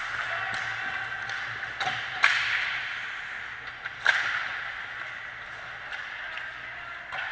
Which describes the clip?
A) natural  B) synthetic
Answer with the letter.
A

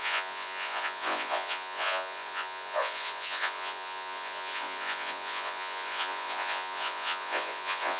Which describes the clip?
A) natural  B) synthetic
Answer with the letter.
B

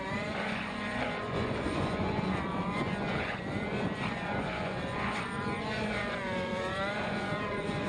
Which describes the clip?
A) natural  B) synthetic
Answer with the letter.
B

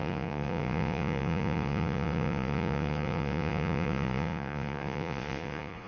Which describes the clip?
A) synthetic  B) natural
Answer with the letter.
A